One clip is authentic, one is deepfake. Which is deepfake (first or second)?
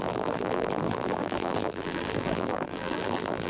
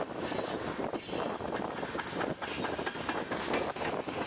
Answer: first